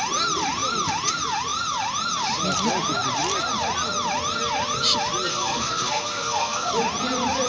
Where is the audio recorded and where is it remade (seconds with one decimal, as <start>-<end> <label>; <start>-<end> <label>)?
0.0-5.3 recorded; 5.3-6.7 remade; 6.7-7.5 recorded